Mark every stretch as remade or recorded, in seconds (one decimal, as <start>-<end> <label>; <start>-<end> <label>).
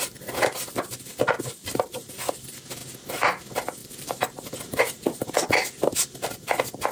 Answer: 0.0-1.6 recorded; 1.6-2.3 remade; 2.3-3.8 recorded; 3.8-4.9 remade; 4.9-6.9 recorded